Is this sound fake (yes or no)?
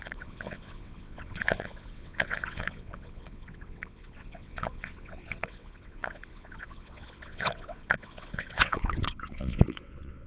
yes